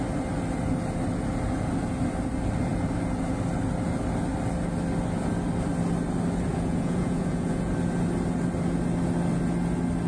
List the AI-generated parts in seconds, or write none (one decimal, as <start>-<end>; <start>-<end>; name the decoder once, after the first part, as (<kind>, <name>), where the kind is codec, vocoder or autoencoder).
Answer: 6.5-7.7 (vocoder, Vocos)